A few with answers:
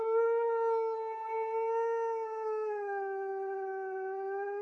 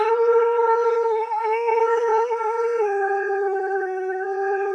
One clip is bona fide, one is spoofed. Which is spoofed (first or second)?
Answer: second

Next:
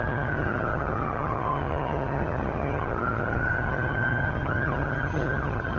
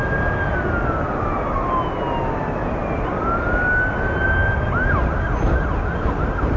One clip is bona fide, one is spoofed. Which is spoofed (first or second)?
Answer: first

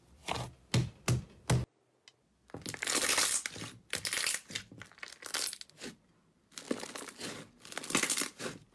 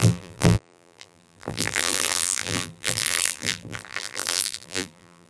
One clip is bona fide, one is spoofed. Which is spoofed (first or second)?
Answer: second